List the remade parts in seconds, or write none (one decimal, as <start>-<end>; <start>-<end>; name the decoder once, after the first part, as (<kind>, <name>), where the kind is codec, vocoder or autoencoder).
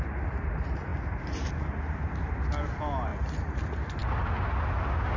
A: 3.1-3.6 (vocoder, BigVGAN v2)